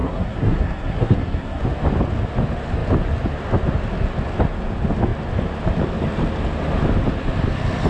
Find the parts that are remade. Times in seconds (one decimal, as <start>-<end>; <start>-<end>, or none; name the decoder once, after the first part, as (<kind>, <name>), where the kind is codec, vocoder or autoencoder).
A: 0.0-1.6 (codec, SNAC)

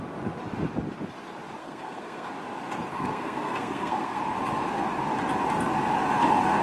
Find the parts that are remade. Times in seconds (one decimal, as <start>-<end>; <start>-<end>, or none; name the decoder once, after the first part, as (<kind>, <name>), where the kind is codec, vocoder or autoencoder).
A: 1.6-2.3 (codec, SNAC); 2.9-4.2

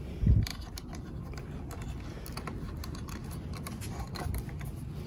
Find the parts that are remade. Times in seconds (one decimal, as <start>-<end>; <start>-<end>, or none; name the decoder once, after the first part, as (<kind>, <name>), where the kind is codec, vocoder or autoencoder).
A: none

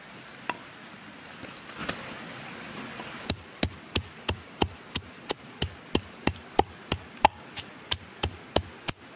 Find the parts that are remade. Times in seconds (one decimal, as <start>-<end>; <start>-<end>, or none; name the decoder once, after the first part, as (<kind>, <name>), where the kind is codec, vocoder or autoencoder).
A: none

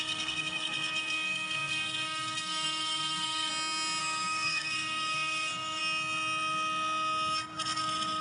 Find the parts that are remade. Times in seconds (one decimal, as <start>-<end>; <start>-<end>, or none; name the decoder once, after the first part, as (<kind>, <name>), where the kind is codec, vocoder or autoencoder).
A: 0.0-3.5 (codec, SNAC); 4.0-5.8

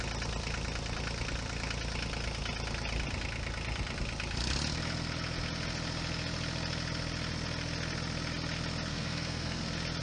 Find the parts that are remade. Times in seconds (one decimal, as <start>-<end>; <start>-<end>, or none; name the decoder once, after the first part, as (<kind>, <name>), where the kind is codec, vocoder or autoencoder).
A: 8.9-9.6 (codec, SNAC)